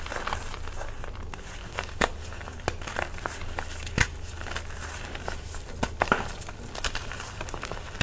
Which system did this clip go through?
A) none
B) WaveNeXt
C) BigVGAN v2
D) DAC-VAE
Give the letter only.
A